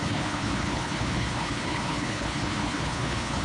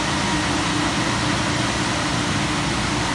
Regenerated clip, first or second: first